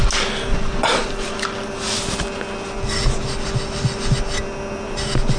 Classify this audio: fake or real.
real